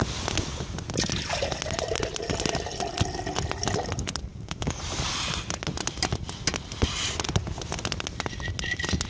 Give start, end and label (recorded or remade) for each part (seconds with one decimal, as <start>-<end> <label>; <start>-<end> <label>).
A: 0.0-4.3 recorded; 4.3-4.8 remade; 4.8-9.1 recorded